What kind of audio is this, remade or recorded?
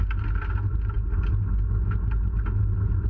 recorded